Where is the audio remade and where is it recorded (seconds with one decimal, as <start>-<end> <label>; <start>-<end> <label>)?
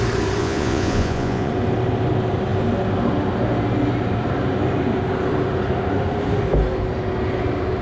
0.0-0.4 recorded; 0.4-1.5 remade; 1.5-7.8 recorded